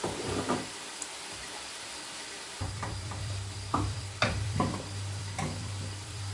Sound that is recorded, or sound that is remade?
remade